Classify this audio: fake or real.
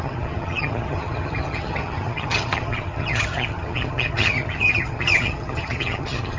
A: fake